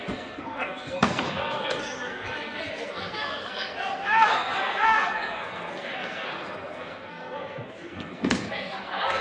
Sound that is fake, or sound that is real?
fake